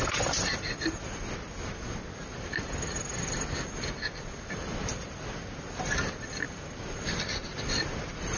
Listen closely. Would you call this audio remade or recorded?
recorded